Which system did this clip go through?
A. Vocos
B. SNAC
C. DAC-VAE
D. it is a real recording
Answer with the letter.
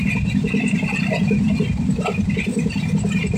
D